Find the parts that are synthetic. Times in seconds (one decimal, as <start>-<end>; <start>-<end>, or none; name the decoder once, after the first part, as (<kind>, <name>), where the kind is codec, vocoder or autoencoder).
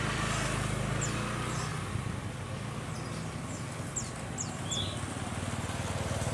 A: none